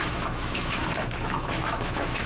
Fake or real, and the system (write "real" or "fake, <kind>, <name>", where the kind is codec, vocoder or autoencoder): fake, autoencoder, DAC-VAE